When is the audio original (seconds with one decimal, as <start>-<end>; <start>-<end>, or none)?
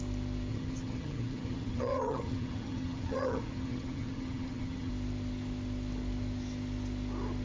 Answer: 0.0-0.5; 4.9-7.4